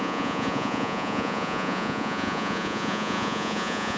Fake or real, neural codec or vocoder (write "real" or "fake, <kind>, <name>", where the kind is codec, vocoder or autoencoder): fake, vocoder, Vocos